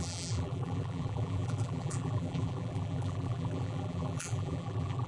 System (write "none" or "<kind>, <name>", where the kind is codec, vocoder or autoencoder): vocoder, BigVGAN v2